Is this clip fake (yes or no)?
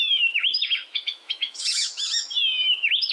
yes